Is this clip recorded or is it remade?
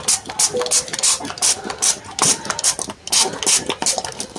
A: recorded